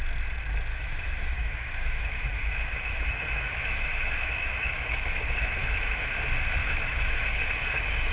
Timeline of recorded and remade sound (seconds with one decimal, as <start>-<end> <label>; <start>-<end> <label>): 0.0-0.7 recorded; 0.7-5.1 remade; 5.1-5.6 recorded; 5.6-6.1 remade; 6.1-6.6 recorded; 6.6-7.4 remade; 7.4-8.1 recorded